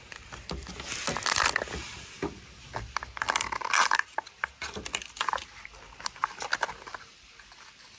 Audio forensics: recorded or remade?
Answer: recorded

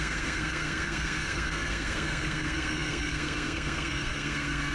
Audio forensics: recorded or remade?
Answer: remade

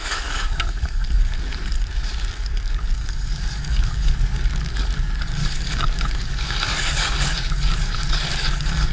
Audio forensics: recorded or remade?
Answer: remade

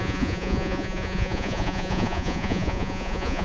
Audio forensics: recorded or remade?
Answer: remade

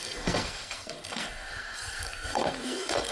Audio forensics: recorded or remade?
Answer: remade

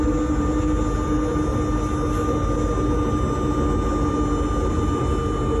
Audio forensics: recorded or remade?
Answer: recorded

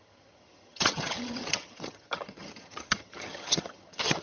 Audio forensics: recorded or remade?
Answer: remade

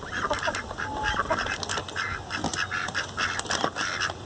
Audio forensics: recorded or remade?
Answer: recorded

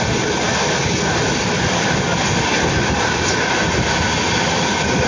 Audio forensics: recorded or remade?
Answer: recorded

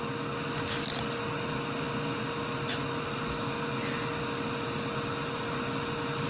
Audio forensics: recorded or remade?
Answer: recorded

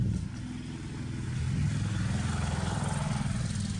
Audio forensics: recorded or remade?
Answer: recorded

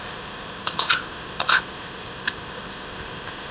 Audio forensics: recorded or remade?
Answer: remade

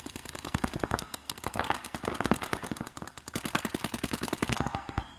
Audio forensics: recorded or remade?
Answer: remade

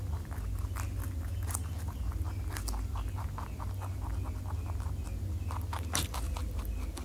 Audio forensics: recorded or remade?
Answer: recorded